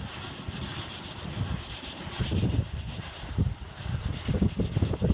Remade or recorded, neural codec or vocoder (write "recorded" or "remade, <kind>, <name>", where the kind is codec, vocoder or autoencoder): remade, vocoder, BigVGAN v2